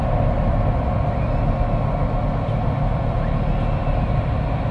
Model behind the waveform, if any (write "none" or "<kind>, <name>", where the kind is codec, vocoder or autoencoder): none